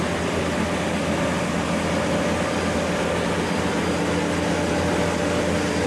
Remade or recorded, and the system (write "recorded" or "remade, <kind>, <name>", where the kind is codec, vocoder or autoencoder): recorded